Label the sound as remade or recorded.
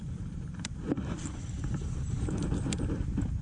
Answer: remade